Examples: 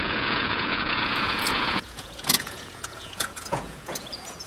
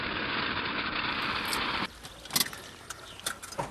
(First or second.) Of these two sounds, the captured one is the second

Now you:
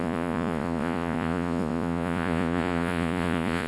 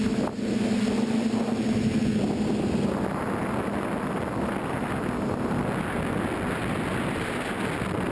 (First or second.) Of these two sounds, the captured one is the second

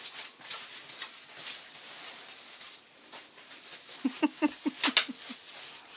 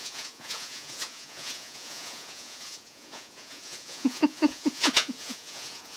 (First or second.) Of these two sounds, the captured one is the first